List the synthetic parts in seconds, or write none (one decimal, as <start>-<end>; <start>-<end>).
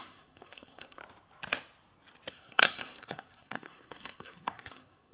0.0-1.0; 2.3-5.1